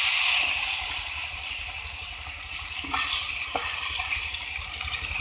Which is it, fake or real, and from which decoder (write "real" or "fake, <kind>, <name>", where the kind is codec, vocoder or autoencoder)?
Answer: real